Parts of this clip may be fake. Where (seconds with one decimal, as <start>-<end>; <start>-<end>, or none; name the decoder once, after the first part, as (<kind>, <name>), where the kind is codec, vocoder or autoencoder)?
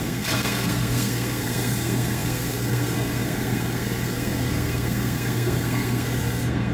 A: 0.0-6.7 (codec, SNAC)